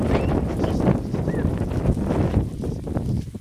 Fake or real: real